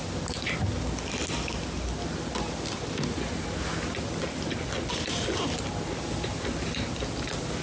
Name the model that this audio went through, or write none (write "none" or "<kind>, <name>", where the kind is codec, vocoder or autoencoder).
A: none